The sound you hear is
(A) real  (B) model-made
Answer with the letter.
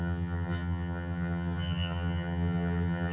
B